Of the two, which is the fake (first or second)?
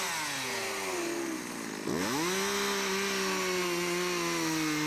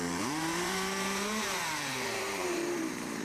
second